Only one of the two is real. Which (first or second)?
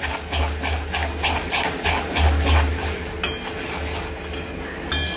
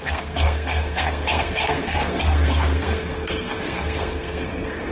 first